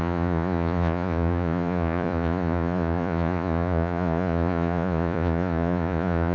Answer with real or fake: fake